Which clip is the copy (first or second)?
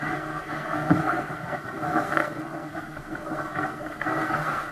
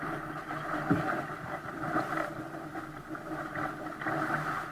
first